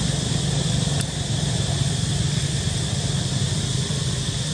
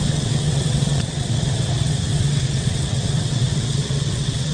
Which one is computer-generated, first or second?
second